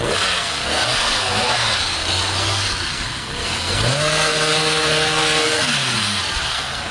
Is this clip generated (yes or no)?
yes